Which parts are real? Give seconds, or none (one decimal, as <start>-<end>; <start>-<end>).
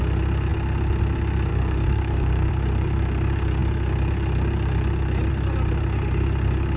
0.0-1.5; 2.5-6.8